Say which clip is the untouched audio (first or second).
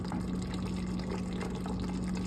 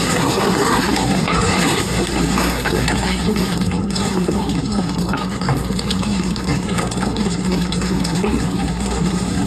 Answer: first